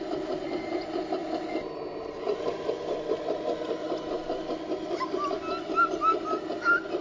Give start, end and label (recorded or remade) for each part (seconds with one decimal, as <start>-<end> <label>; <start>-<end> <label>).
0.0-1.2 remade; 1.2-5.4 recorded; 5.4-7.0 remade